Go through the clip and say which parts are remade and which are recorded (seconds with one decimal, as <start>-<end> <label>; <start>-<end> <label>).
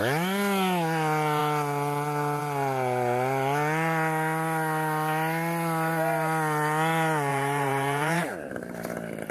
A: 0.0-7.3 recorded; 7.3-8.7 remade; 8.7-9.3 recorded